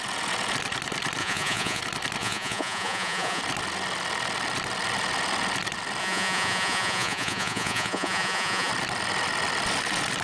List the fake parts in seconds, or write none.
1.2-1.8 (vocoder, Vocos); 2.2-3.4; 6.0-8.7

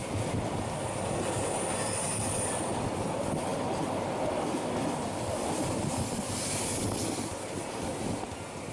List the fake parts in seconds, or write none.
none

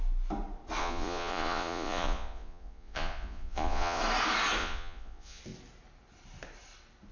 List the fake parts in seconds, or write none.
0.8-4.0 (vocoder, Vocos); 4.6-5.4

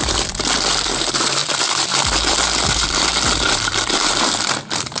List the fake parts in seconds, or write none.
0.0-1.4 (vocoder, BigVGAN v2); 3.5-5.0